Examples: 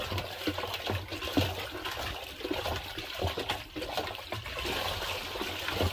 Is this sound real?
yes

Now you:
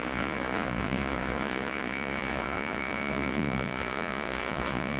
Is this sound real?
no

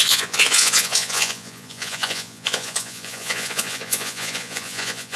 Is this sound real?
no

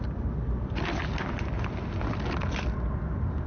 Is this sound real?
yes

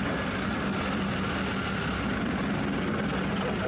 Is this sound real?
yes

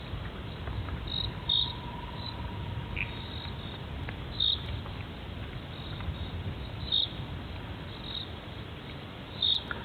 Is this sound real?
yes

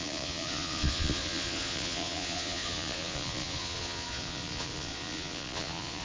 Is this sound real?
no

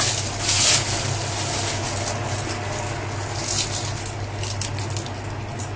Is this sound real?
yes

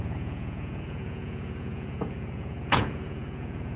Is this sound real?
no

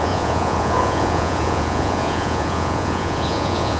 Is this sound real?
no